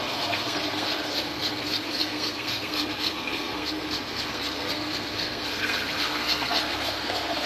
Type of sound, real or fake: fake